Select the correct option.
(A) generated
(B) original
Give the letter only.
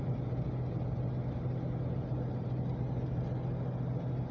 B